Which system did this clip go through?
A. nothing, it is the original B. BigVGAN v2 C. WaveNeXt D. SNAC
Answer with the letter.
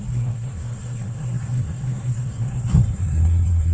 D